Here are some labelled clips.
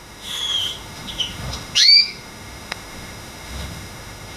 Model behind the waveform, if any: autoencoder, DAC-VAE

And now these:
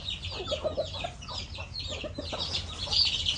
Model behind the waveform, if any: none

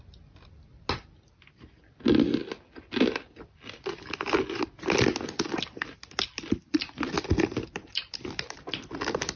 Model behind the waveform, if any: none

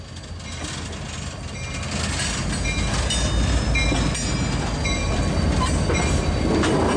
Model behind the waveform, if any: none